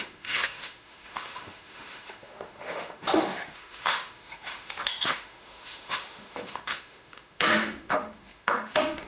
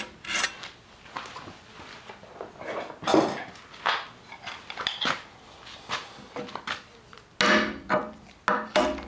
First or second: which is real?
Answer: second